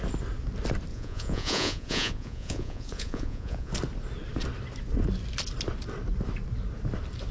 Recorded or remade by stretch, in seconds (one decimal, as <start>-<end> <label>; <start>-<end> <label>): 0.0-0.9 recorded; 0.9-3.7 remade; 3.7-7.3 recorded